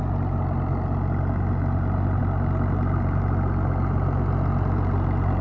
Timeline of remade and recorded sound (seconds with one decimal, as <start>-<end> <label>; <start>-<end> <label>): 0.0-5.4 recorded